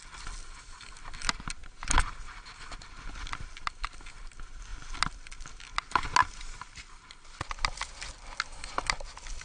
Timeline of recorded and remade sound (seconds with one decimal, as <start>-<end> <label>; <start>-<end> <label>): 0.0-9.4 recorded